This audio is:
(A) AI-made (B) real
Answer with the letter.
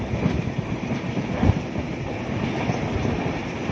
B